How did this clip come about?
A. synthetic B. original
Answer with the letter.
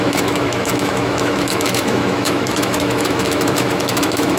A